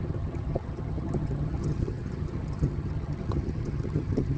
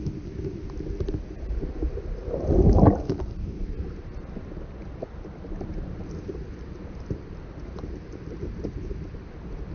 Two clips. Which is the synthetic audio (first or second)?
first